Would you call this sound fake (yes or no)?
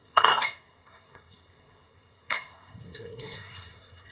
yes